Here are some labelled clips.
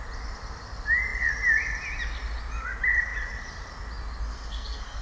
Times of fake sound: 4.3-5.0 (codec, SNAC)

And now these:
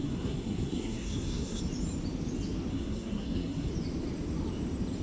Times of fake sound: 0.0-1.6 (codec, SNAC); 2.7-3.7